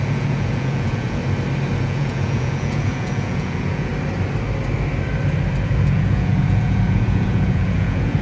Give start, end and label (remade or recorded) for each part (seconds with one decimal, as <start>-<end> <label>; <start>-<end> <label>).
0.0-1.2 remade; 1.2-1.8 recorded; 1.8-3.9 remade; 3.9-5.6 recorded; 5.6-8.2 remade